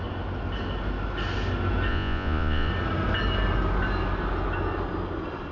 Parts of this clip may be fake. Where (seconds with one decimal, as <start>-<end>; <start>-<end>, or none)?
1.9-2.7